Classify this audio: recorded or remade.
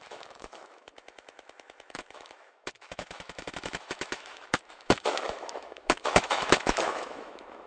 remade